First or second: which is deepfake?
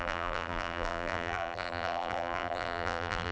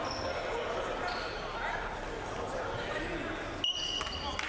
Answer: first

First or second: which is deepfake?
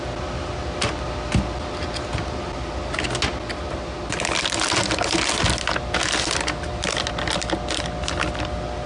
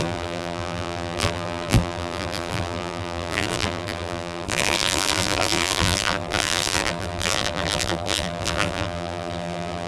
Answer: second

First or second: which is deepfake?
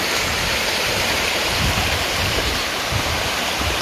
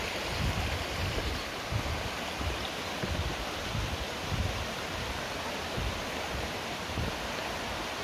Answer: first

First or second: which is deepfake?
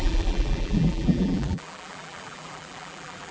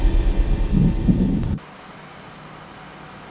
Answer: first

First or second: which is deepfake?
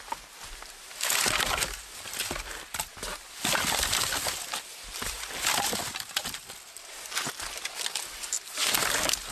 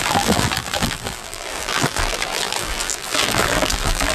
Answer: second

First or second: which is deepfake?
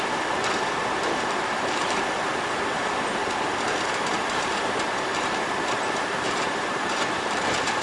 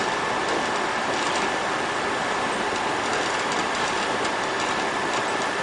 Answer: first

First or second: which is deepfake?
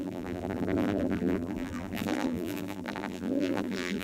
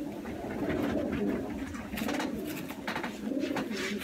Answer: first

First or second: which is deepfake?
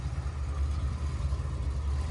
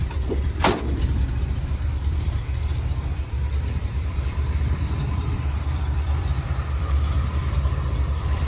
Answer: second